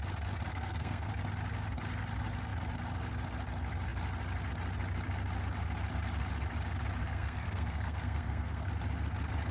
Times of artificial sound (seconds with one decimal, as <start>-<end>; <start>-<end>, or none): 0.5-1.1; 7.0-8.7